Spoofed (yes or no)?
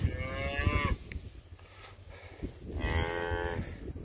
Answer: no